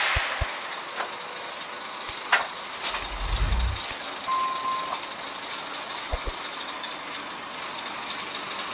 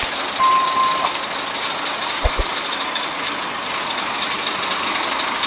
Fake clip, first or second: second